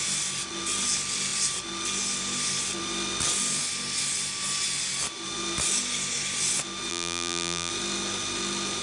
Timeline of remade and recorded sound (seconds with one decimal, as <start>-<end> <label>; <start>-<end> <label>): 0.0-6.9 recorded; 6.9-7.7 remade; 7.7-8.8 recorded